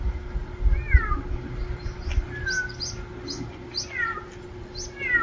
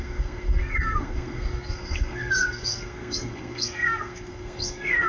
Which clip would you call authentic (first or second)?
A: first